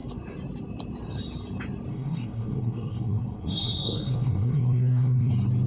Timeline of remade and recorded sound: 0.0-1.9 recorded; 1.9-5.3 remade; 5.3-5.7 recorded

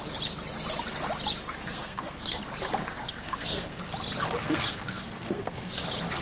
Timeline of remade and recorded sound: 0.0-1.6 recorded; 1.6-2.4 remade; 2.4-2.9 recorded; 2.9-3.8 remade; 3.8-4.4 recorded; 4.4-5.8 remade; 5.8-6.2 recorded

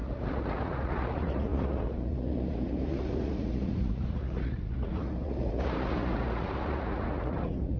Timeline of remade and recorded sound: 0.0-7.8 remade

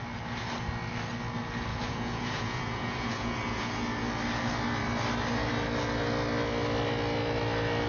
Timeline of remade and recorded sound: 0.0-1.7 recorded; 1.7-3.7 remade; 3.7-7.9 recorded

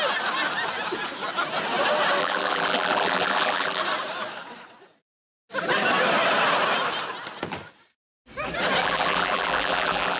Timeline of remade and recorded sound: 0.0-2.2 recorded; 2.2-3.8 remade; 3.8-8.8 recorded; 8.8-10.2 remade